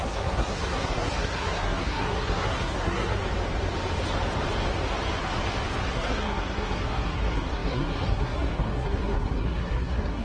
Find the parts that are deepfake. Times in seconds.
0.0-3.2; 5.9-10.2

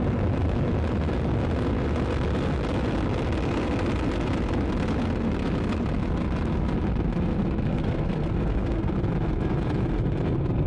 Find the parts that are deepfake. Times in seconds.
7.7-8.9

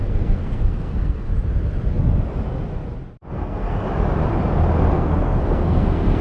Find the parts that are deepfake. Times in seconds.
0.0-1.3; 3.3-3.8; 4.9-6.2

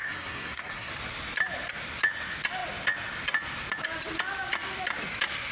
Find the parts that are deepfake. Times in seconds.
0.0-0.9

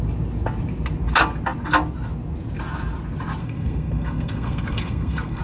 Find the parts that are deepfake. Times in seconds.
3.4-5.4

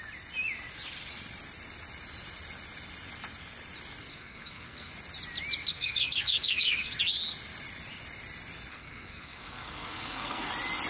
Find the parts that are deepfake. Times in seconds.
4.1-4.9; 5.7-6.9; 8.7-10.5

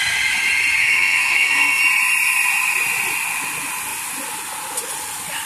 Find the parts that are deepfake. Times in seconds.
0.8-1.8